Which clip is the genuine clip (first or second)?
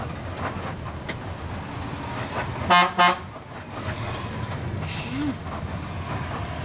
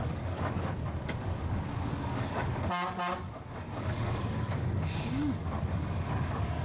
first